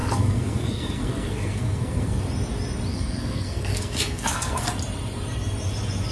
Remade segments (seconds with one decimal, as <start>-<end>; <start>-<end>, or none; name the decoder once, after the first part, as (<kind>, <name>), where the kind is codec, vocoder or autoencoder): 0.0-2.2 (codec, SNAC); 2.9-4.7